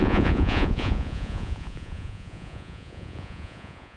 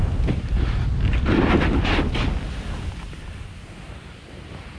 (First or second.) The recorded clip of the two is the second